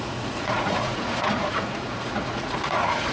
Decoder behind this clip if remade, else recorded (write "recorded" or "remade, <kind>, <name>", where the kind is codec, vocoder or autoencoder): remade, vocoder, Vocos